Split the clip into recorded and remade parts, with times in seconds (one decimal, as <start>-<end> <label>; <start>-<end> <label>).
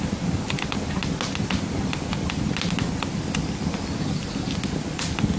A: 0.0-5.4 recorded